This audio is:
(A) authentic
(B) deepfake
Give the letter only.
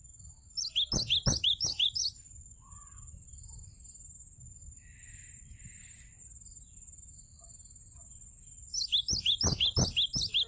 A